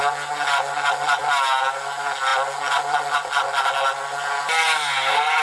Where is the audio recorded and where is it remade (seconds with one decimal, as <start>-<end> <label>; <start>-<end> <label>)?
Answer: 0.0-5.4 recorded